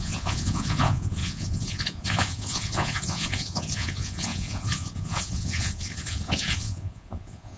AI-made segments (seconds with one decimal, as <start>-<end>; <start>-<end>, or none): 0.0-7.6